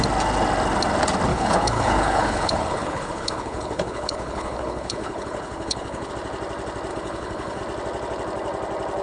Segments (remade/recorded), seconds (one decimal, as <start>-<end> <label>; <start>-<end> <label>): 0.0-1.3 recorded; 1.3-6.1 remade; 6.1-6.9 recorded; 6.9-7.6 remade; 7.6-9.0 recorded